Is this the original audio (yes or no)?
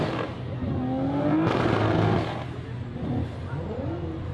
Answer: yes